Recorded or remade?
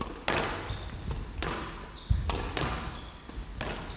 recorded